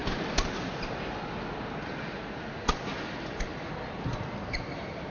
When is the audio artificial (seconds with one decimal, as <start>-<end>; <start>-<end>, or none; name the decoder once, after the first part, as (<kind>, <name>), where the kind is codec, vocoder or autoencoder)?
none